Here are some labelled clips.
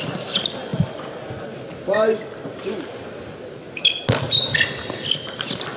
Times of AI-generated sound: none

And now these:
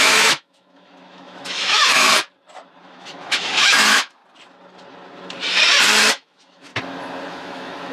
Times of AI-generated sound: 0.0-2.1 (autoencoder, DAC-VAE); 2.8-4.2; 6.1-6.7; 7.3-7.9

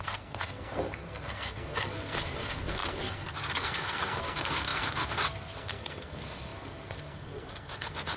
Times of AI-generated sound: 0.0-8.2 (codec, SNAC)

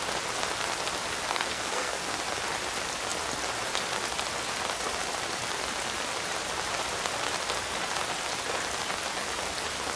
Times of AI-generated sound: 1.3-2.2 (codec, SNAC)

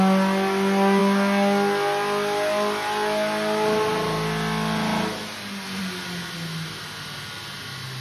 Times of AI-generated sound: none

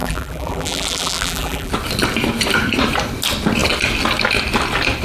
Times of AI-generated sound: 0.0-1.7 (vocoder, BigVGAN v2)

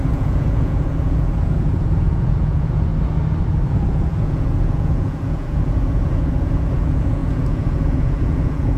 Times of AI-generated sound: 0.0-2.9 (vocoder, Vocos); 3.7-8.8